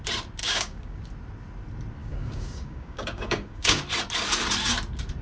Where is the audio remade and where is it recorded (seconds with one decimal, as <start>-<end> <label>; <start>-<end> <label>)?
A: 0.0-0.4 recorded; 0.4-1.0 remade; 1.0-2.0 recorded; 2.0-3.8 remade; 3.8-5.2 recorded